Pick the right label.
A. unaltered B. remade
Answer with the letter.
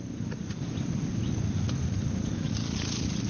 A